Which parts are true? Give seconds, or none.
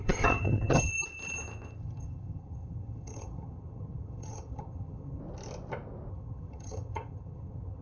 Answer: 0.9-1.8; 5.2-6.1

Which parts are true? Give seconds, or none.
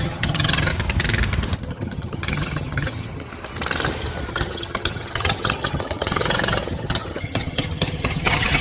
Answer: 0.7-1.7; 3.3-4.3